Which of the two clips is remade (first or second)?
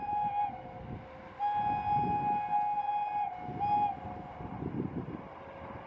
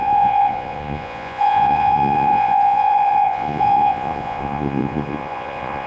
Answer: second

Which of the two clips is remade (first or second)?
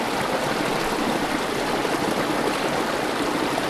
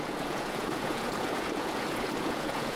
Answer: second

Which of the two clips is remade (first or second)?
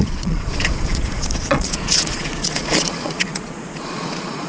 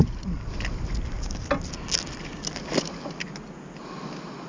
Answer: first